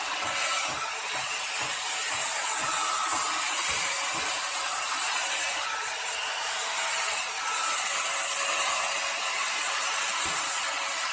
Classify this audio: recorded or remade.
recorded